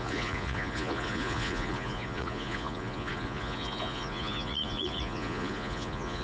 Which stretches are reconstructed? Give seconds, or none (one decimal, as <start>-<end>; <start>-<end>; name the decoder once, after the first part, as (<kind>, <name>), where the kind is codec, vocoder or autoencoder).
0.0-6.2 (vocoder, Vocos)